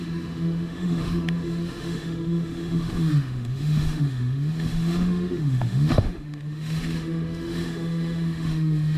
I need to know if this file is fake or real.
fake